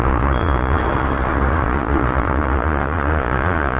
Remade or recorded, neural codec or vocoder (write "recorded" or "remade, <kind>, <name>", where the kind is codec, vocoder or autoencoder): remade, vocoder, Vocos